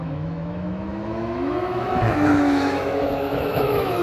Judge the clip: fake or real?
fake